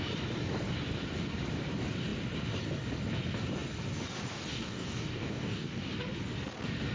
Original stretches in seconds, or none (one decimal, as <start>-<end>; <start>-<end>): 0.0-4.5; 5.9-6.9